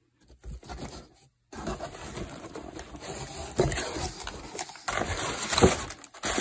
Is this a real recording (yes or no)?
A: yes